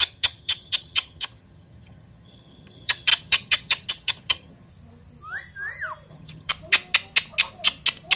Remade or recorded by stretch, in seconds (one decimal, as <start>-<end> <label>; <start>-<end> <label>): 0.0-4.7 remade; 4.7-6.1 recorded; 6.1-6.5 remade; 6.5-8.2 recorded